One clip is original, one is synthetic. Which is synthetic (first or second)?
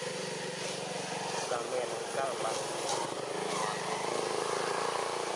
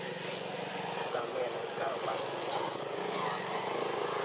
second